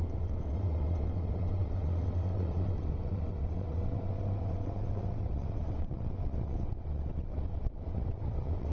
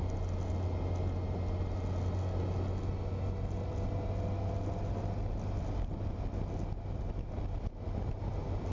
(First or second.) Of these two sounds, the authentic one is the second